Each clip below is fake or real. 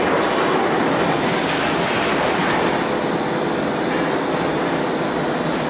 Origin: real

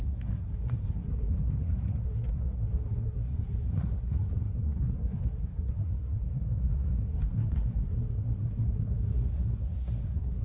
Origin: fake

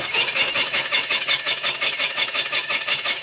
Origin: fake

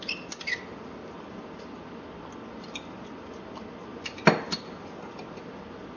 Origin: real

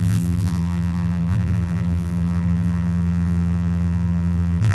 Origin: fake